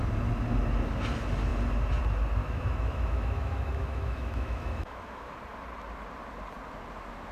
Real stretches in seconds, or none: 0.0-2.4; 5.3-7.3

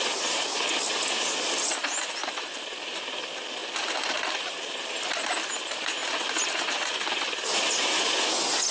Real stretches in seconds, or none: 0.0-8.7

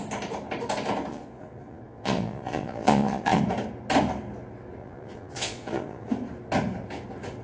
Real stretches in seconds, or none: 0.0-1.1; 3.4-4.8; 6.1-7.4

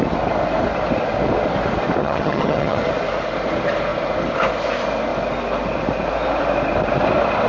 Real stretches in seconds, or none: 0.0-2.0; 2.8-7.5